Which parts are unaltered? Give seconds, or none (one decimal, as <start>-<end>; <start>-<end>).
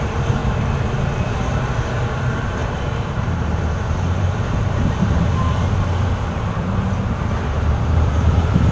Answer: 0.4-1.3